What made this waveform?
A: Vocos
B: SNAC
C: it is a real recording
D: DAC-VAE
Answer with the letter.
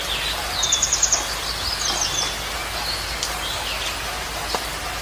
C